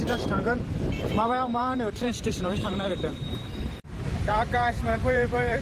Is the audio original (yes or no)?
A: no